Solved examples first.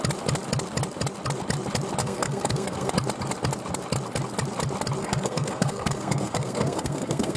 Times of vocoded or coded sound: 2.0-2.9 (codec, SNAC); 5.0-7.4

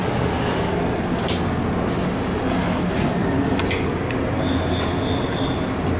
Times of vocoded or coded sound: none